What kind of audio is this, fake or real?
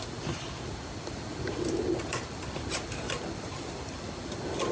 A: real